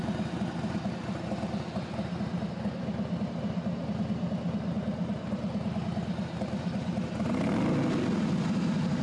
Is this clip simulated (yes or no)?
no